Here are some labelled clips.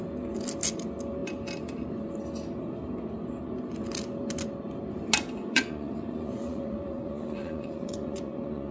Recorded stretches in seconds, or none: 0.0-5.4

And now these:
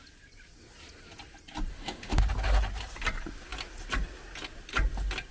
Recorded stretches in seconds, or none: 0.0-1.7; 2.2-5.3

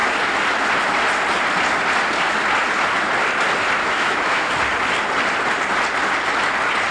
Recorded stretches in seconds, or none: 0.0-3.8; 4.5-6.9

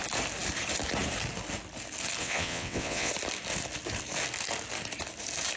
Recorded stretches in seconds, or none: 0.0-2.2; 3.1-5.6

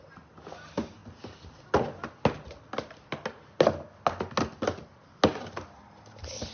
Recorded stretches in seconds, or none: 0.0-6.5